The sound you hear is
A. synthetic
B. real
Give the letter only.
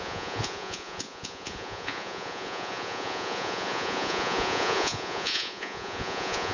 A